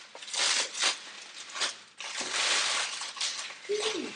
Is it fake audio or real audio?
real